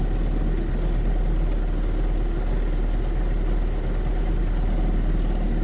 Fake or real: real